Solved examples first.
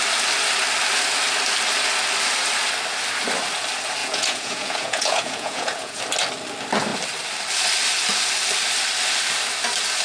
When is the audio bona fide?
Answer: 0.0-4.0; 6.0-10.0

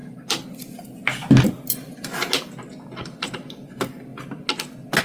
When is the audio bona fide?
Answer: 0.0-5.0

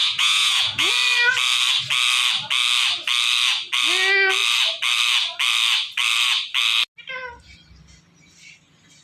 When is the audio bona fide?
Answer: 0.9-9.0

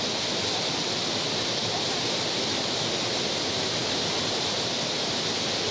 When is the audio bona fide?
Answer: 0.0-5.7

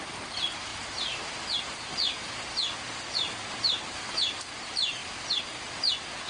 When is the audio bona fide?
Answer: 0.0-6.3

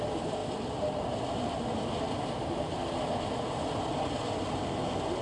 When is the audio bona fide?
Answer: 0.0-5.2

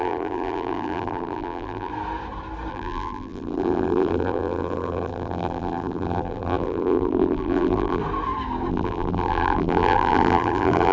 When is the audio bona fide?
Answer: 1.9-2.7; 8.0-8.7